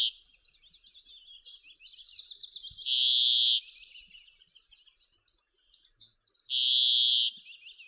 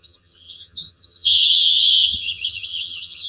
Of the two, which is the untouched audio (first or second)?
first